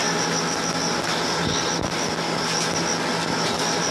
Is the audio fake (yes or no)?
no